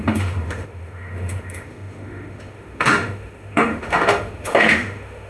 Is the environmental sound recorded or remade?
remade